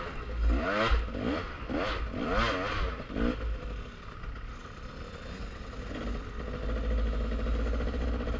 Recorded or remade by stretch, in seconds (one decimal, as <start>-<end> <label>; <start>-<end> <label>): 0.0-8.4 recorded